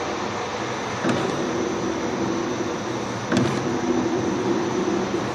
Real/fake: real